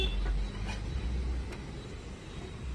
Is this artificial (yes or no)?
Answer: no